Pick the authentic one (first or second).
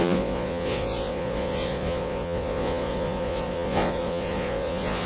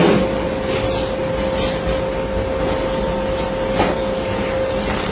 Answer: second